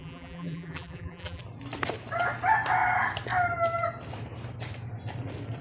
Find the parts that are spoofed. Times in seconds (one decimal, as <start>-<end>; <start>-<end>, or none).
0.0-1.4